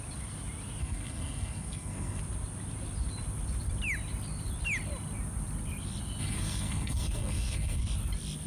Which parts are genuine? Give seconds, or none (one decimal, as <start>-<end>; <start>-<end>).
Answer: 0.0-0.8; 2.2-6.2; 7.8-8.5